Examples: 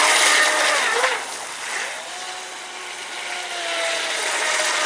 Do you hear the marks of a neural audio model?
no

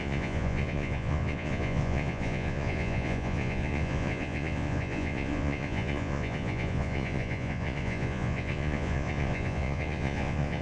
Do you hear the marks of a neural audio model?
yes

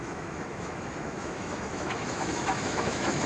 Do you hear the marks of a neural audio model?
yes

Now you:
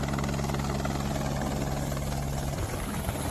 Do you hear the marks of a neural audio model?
no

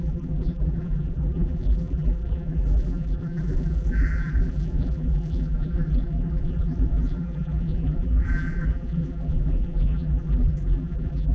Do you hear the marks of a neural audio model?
yes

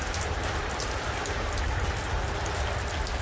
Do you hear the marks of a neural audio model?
no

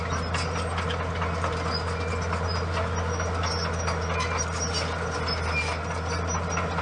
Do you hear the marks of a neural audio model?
no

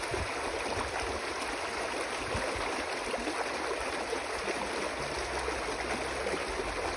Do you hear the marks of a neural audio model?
no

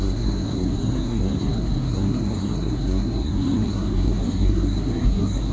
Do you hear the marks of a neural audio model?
yes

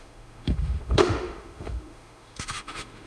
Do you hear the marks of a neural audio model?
yes